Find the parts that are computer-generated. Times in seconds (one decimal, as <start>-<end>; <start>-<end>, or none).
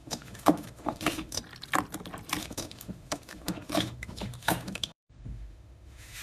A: 0.0-1.4; 2.4-6.2